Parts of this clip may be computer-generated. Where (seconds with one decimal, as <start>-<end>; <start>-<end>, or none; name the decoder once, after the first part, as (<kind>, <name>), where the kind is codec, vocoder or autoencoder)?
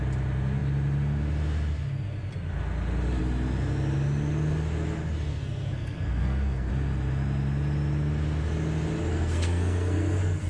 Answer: 5.3-6.7 (codec, SNAC); 9.1-10.5